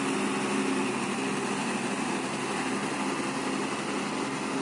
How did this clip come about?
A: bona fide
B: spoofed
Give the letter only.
A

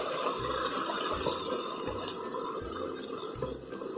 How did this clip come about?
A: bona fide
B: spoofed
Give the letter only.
A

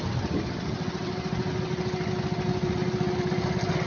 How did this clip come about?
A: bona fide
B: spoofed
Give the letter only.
A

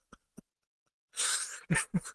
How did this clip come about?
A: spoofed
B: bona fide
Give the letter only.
B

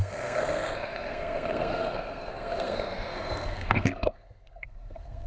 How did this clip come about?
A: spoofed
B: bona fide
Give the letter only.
A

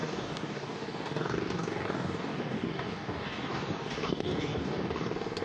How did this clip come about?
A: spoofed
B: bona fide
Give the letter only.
A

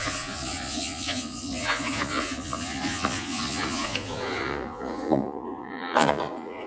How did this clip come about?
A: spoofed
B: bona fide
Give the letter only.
A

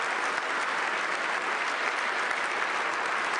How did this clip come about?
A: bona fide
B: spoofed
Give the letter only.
A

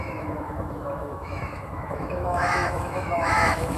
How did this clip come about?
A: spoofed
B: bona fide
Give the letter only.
A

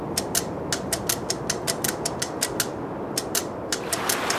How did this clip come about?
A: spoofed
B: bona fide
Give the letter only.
B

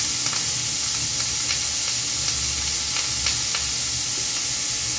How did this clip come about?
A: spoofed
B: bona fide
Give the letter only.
B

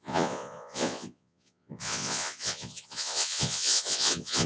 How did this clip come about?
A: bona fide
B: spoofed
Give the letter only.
B